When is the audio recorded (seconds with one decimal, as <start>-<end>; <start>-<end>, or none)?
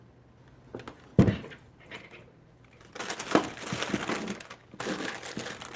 0.0-5.8